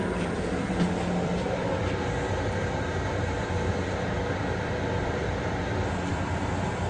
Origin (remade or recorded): remade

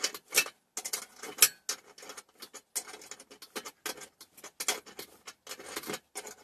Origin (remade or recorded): recorded